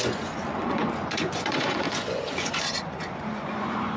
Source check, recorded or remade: remade